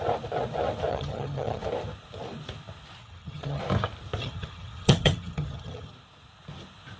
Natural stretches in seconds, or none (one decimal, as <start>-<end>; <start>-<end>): 0.0-0.9; 1.6-3.0; 3.6-4.2; 5.9-7.0